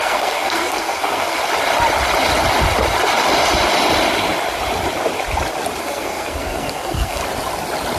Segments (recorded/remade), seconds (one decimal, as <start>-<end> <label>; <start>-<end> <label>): 0.0-1.4 remade; 1.4-5.8 recorded; 5.8-7.2 remade; 7.2-8.0 recorded